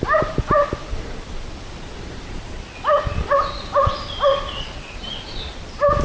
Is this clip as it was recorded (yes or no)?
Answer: yes